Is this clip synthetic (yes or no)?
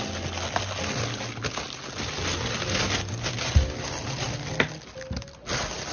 no